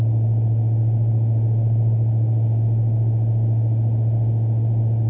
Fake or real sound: real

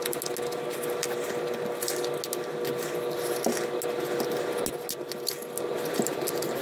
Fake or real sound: real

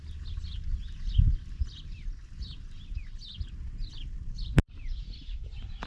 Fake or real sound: real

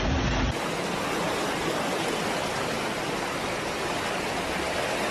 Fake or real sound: real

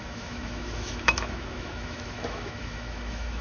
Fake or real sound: fake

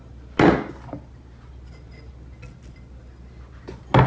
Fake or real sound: real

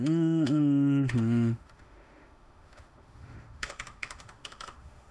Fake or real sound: fake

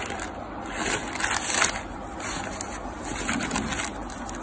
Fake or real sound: real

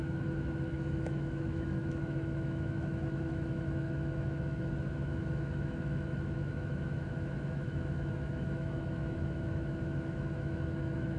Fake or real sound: fake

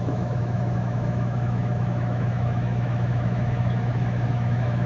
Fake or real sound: fake